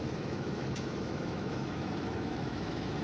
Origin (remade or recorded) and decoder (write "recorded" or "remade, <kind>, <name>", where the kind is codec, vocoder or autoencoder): remade, autoencoder, DAC-VAE